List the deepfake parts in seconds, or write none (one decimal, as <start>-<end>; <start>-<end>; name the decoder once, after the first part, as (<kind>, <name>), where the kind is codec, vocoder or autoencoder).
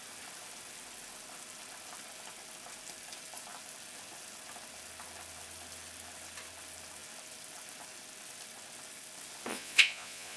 9.5-10.4 (vocoder, Vocos)